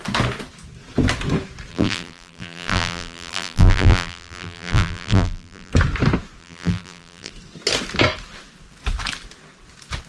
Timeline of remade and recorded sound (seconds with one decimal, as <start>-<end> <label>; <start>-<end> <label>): 0.0-1.7 recorded; 1.7-5.7 remade; 5.7-6.4 recorded; 6.4-7.3 remade; 7.3-10.1 recorded